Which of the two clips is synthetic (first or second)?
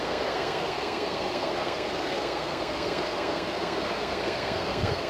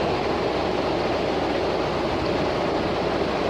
first